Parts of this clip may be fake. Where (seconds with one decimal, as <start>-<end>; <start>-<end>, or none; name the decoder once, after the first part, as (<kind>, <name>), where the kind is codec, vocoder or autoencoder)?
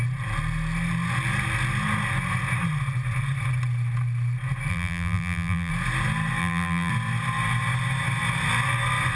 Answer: 4.7-5.7 (vocoder, BigVGAN v2); 6.4-6.9